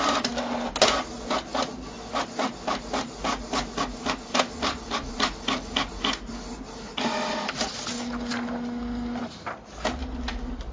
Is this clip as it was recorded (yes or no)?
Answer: yes